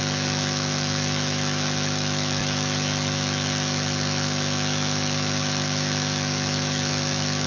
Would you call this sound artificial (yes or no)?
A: yes